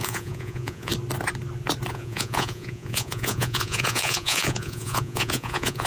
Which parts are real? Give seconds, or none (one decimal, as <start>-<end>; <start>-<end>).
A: 0.9-1.9